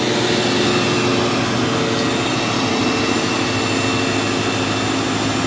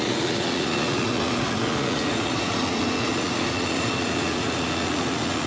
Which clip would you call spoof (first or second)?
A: second